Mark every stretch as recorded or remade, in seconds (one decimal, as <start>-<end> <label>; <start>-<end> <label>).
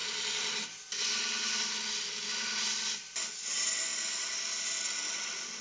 0.0-5.6 recorded